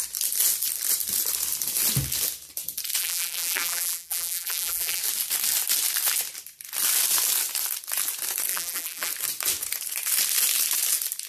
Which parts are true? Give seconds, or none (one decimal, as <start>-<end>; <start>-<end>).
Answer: 0.0-3.0; 5.0-8.5; 9.1-11.3